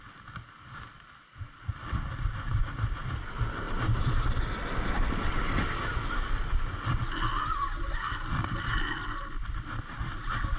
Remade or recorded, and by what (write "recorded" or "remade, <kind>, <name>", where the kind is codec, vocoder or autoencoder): recorded